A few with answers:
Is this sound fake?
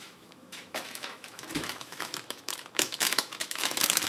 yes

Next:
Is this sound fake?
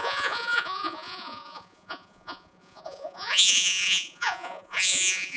yes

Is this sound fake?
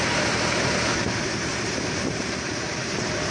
yes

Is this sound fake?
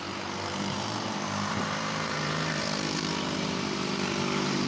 yes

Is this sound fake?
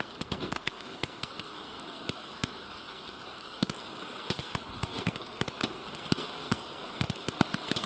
yes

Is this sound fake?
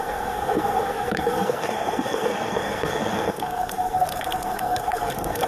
yes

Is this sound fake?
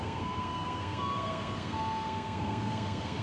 yes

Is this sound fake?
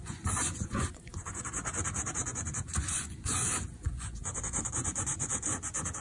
yes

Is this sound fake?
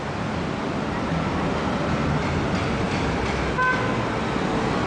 no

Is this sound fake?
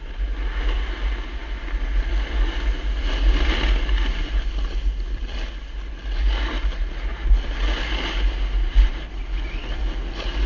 no